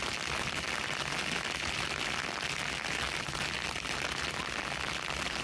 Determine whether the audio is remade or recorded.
recorded